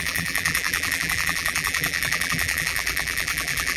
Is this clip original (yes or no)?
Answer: no